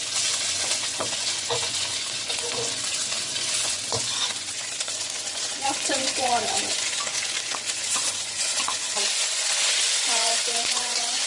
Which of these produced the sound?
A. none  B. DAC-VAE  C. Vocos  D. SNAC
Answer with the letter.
C